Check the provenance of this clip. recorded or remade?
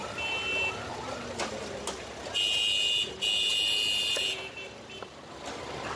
recorded